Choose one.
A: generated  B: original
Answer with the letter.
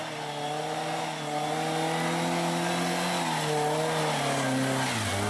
B